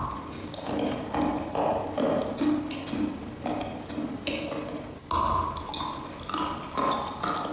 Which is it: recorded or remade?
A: recorded